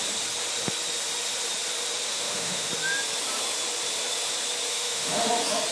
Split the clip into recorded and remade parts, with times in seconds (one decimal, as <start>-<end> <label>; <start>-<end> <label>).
0.0-2.1 recorded; 2.1-2.7 remade; 2.7-4.7 recorded; 4.7-5.3 remade; 5.3-5.7 recorded